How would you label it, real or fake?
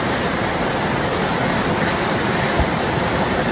real